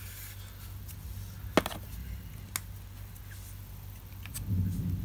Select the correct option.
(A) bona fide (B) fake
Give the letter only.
A